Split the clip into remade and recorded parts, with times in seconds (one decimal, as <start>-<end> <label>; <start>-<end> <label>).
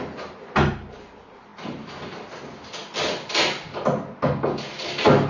0.0-5.3 recorded